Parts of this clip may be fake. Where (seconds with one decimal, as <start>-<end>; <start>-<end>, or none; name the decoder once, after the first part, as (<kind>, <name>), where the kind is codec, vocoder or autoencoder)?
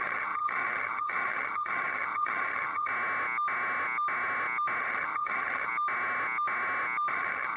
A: 0.0-2.9 (vocoder, HiFi-GAN); 4.8-5.7; 7.1-7.6